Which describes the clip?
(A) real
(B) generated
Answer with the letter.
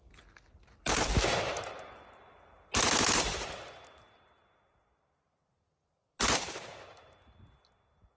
A